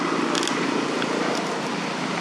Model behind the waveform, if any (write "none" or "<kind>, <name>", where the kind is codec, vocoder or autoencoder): none